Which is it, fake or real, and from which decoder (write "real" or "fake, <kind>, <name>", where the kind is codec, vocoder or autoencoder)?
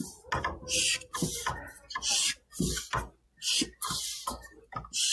real